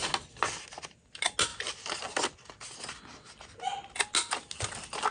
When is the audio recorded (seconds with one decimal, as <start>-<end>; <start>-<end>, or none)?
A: 0.0-5.1